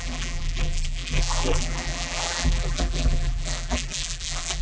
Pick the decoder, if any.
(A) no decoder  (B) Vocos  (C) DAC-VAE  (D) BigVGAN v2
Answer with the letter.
D